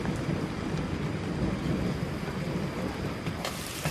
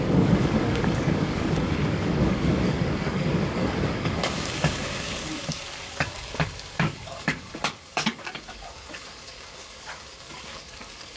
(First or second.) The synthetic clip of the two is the second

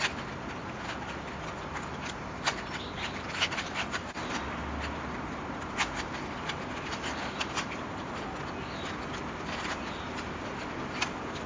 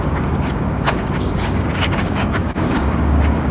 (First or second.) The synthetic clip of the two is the second